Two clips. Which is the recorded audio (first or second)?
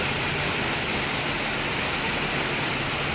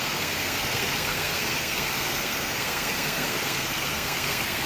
first